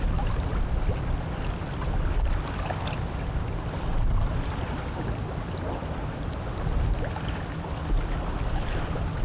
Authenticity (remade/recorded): recorded